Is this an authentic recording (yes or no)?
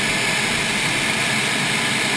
yes